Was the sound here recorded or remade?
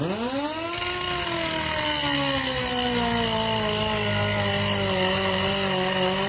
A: recorded